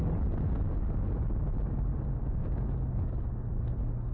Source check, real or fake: real